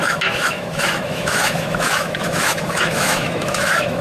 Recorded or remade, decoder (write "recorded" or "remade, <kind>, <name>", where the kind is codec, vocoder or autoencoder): remade, autoencoder, DAC-VAE